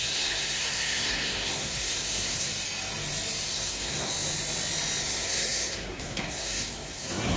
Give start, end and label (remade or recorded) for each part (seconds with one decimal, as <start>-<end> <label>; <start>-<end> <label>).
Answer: 0.0-2.5 remade; 2.5-3.5 recorded; 3.5-4.1 remade; 4.1-5.0 recorded; 5.0-7.4 remade